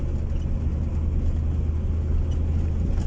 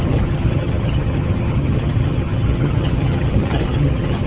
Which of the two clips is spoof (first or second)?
second